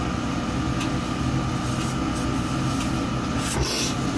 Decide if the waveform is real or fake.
real